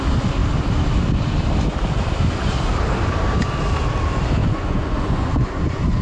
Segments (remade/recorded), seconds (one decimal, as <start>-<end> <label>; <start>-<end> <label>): 0.0-4.4 recorded; 4.4-6.0 remade